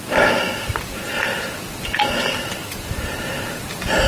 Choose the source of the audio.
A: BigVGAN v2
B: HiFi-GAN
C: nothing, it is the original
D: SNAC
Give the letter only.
C